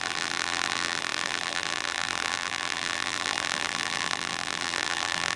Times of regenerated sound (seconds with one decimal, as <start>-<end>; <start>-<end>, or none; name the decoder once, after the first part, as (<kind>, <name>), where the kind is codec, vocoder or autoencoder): 0.0-5.4 (vocoder, BigVGAN v2)